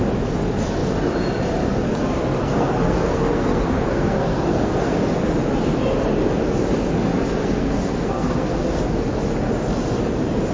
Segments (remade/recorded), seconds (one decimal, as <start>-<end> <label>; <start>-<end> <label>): 0.0-2.4 recorded; 2.4-5.0 remade; 5.0-7.4 recorded; 7.4-8.8 remade; 8.8-10.5 recorded